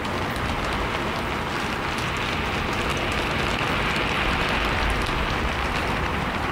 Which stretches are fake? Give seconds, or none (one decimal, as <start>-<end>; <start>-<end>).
5.8-6.5